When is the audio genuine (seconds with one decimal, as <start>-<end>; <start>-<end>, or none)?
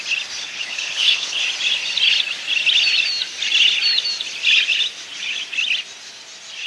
0.0-0.4; 1.4-6.7